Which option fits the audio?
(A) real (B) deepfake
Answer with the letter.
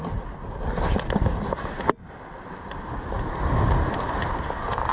A